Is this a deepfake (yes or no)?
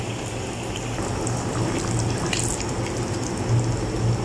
no